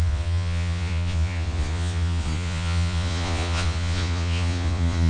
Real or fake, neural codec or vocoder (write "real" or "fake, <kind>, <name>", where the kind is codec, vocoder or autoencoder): fake, vocoder, Vocos